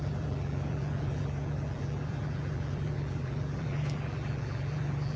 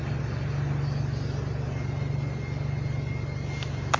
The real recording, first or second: second